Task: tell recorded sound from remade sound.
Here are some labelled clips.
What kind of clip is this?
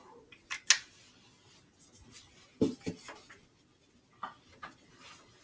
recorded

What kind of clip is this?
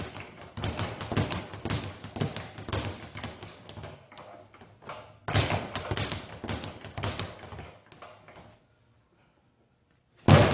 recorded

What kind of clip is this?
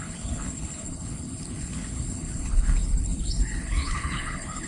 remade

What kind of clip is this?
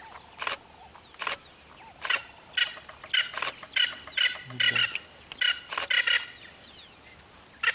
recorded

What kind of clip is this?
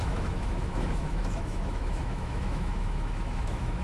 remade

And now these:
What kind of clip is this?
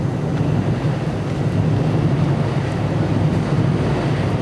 recorded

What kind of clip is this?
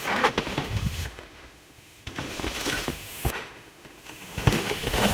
remade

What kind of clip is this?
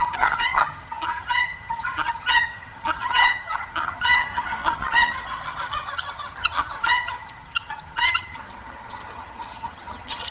remade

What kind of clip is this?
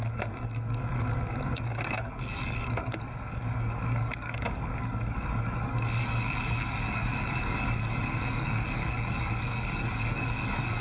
remade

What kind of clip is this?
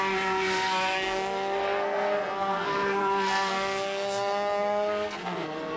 remade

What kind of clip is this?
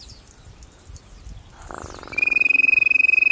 recorded